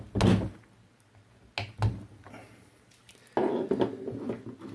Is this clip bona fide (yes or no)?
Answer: yes